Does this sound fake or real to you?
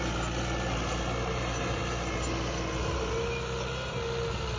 real